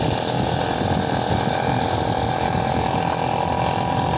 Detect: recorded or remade recorded